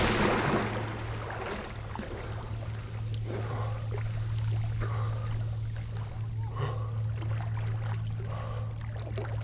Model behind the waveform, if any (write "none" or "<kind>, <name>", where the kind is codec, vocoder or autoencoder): none